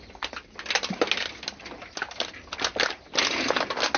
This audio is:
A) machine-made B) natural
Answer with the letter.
B